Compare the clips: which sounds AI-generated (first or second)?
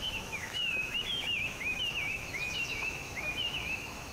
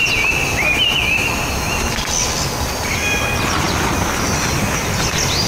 first